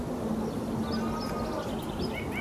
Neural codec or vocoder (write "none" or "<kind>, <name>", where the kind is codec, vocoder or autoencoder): none